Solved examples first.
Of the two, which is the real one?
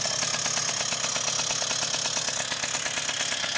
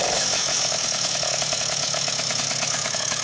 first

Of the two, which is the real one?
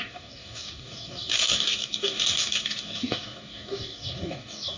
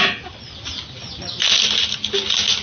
second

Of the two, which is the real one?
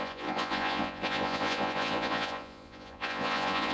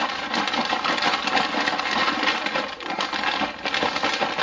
second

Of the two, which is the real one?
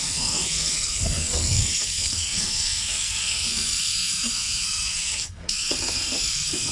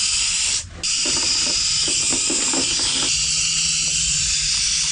second